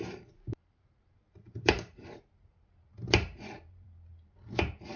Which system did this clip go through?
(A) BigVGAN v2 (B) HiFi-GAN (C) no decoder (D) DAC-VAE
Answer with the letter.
A